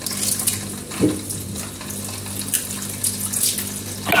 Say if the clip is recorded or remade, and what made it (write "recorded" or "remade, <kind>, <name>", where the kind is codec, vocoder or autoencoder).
recorded